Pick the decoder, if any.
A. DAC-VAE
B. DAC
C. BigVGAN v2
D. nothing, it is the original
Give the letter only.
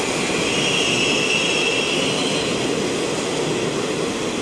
D